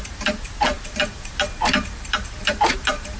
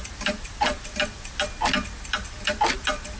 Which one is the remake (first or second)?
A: first